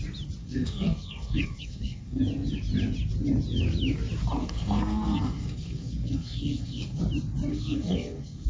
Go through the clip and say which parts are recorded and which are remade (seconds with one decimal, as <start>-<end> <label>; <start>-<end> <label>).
0.0-0.4 recorded; 0.4-2.2 remade; 2.2-4.4 recorded; 4.4-7.0 remade; 7.0-7.5 recorded; 7.5-8.5 remade